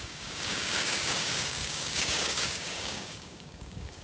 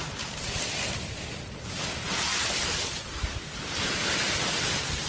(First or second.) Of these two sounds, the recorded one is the second